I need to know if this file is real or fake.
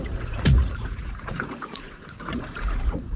fake